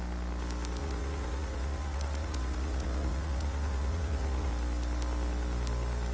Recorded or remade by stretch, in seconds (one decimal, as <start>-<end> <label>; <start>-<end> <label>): 0.0-0.8 recorded; 0.8-4.5 remade; 4.5-6.1 recorded